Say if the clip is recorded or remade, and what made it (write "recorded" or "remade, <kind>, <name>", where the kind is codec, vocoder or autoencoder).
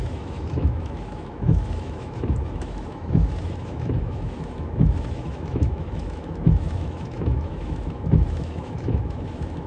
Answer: remade, autoencoder, DAC-VAE